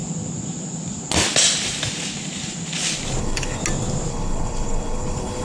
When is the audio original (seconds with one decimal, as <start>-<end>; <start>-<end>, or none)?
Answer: 0.0-3.2; 3.6-4.1